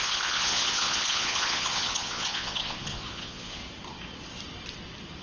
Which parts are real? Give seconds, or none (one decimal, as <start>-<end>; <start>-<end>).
3.6-5.2